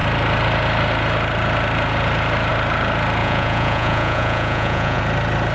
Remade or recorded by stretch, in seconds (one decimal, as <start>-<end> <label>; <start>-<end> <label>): 0.0-3.2 recorded; 3.2-5.0 remade; 5.0-5.5 recorded